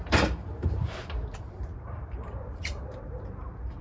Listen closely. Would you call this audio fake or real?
fake